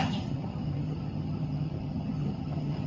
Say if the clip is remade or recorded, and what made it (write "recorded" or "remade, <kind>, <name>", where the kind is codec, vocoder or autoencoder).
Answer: remade, vocoder, HiFi-GAN